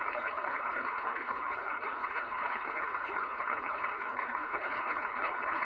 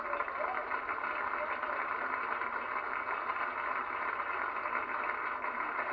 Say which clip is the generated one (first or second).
first